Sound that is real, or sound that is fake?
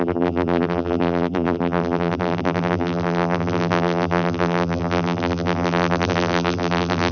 fake